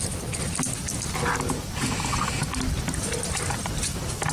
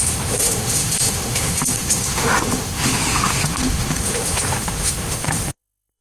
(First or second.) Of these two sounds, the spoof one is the second